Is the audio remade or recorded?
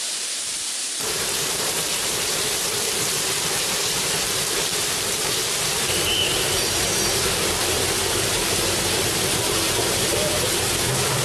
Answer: remade